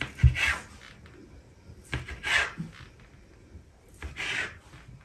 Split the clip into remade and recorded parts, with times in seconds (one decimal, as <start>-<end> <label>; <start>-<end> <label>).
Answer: 0.0-5.0 recorded